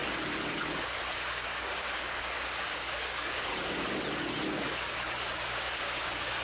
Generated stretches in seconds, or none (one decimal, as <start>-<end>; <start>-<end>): 1.1-3.5; 4.6-6.4